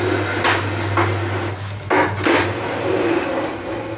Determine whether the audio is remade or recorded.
recorded